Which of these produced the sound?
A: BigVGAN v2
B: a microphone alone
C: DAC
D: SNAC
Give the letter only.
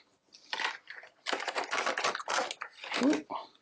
B